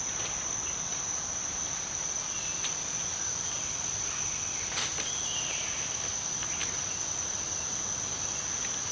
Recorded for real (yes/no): yes